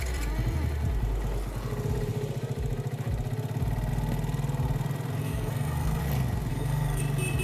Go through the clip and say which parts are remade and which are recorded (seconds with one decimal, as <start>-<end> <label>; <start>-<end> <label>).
0.0-5.2 recorded; 5.2-6.0 remade; 6.0-6.5 recorded; 6.5-7.0 remade; 7.0-7.4 recorded